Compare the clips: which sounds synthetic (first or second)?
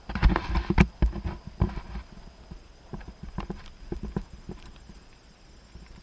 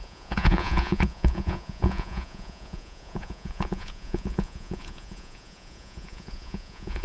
second